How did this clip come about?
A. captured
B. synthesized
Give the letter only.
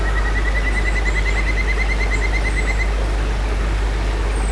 A